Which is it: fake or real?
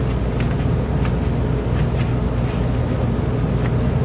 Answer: real